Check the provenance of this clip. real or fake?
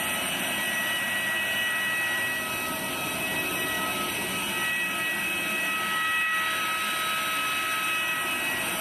real